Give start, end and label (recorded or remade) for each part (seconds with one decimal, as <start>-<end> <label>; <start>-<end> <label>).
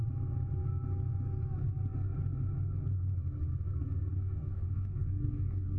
0.0-4.1 recorded; 4.1-5.8 remade